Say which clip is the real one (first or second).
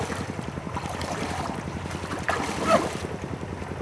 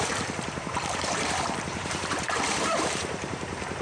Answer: first